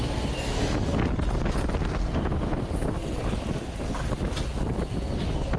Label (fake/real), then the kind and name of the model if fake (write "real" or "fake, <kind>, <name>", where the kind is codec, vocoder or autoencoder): real